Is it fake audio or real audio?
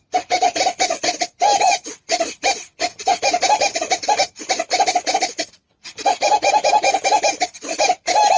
real